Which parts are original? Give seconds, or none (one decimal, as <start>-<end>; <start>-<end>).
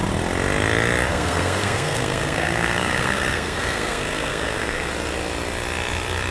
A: 0.0-1.1; 4.9-6.3